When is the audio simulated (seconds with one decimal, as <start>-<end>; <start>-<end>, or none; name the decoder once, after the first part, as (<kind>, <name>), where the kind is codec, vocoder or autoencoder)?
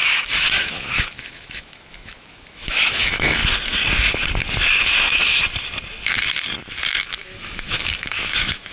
0.0-3.4 (autoencoder, DAC-VAE); 6.9-8.7